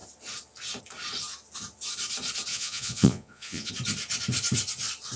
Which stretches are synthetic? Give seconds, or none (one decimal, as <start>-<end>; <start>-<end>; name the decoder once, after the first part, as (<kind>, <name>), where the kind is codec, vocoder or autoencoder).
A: 2.5-3.7 (vocoder, Vocos)